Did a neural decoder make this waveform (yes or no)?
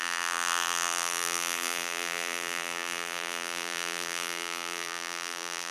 yes